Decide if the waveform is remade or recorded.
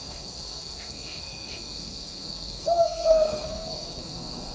remade